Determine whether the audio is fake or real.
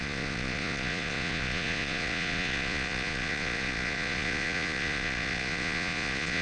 fake